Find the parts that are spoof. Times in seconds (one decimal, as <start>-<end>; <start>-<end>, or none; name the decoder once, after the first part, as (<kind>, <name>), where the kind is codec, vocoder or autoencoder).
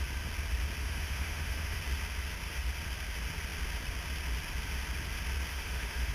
0.8-1.8 (autoencoder, DAC-VAE); 5.5-6.1